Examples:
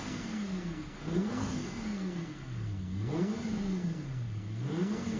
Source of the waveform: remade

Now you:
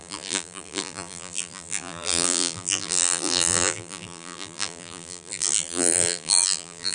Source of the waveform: remade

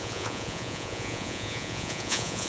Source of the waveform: remade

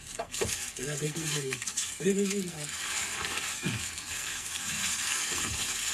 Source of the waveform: remade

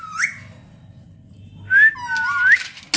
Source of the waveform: recorded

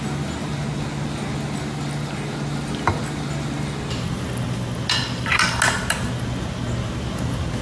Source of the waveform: recorded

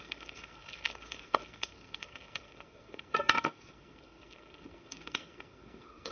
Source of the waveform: remade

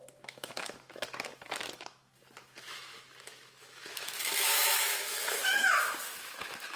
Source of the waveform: remade